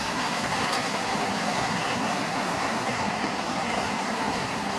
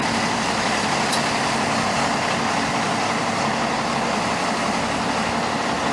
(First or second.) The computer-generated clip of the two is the first